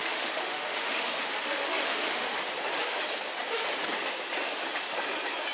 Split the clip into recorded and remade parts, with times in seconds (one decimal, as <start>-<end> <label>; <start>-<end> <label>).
0.0-2.4 remade; 2.4-5.5 recorded